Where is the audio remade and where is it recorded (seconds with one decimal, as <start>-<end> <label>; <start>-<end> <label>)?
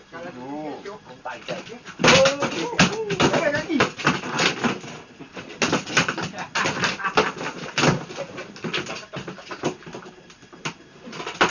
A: 0.0-11.5 recorded